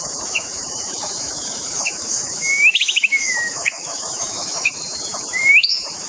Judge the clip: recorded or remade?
remade